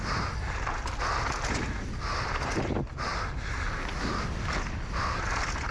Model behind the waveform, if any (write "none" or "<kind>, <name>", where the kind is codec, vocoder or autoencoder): none